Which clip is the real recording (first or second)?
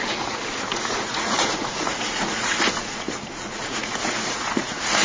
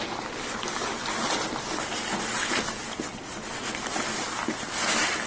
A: second